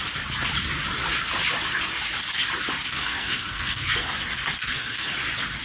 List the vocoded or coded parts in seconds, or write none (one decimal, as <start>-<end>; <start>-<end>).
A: 2.9-4.1; 4.6-5.1